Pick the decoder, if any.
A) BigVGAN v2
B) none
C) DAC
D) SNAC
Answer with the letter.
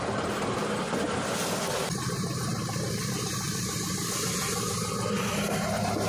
B